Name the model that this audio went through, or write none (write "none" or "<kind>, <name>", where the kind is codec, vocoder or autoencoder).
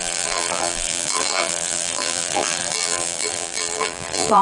vocoder, BigVGAN v2